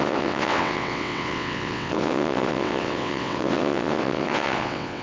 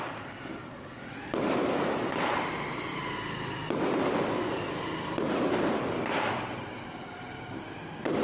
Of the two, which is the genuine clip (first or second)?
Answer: second